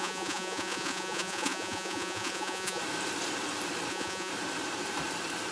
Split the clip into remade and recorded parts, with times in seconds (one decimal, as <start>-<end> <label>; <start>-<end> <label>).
0.0-2.8 remade; 2.8-3.9 recorded; 3.9-4.3 remade; 4.3-5.5 recorded